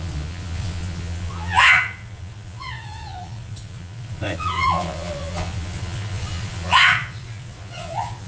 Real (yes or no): no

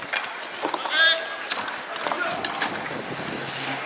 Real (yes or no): yes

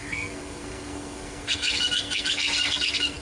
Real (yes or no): no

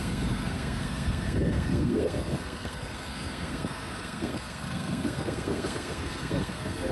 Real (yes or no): no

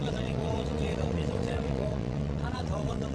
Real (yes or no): no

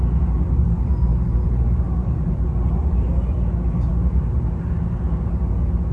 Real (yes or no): yes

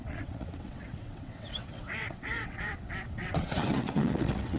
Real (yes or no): no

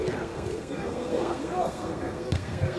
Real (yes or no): no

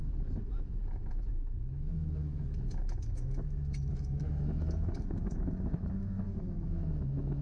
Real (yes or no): no